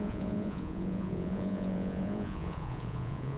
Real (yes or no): no